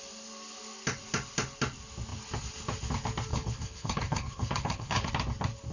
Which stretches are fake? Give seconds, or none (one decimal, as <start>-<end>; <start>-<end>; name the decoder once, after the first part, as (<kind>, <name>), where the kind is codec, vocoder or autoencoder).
3.3-5.1 (codec, HILCodec)